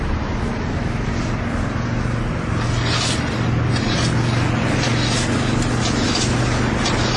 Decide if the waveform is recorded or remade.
recorded